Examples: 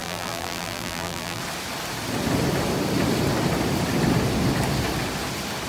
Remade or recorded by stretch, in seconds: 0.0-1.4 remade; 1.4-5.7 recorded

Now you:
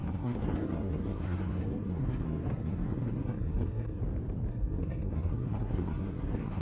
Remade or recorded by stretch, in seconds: 0.0-4.0 remade; 4.0-4.5 recorded; 4.5-6.6 remade

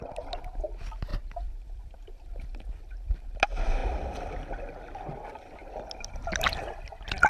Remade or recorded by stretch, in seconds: 0.0-1.1 recorded; 1.1-3.3 remade; 3.3-7.3 recorded

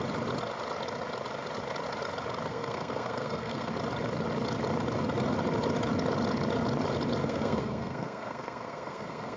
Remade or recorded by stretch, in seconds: 0.0-2.5 recorded; 2.5-3.7 remade; 3.7-7.2 recorded; 7.2-9.4 remade

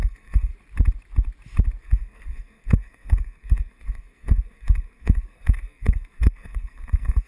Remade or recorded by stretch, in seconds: 0.0-0.5 remade; 0.5-1.8 recorded; 1.8-7.3 remade

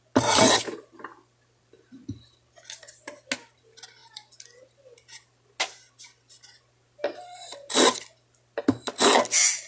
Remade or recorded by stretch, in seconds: 0.0-9.7 recorded

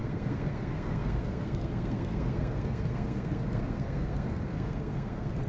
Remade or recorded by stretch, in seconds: 0.0-5.5 remade